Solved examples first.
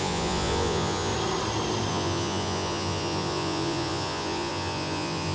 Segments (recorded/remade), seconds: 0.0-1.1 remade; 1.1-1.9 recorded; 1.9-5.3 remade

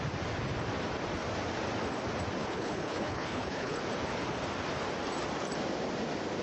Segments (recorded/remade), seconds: 0.0-2.4 recorded; 2.4-3.8 remade; 3.8-6.4 recorded